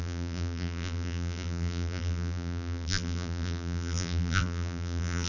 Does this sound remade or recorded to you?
remade